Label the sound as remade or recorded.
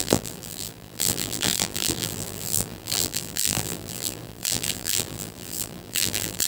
remade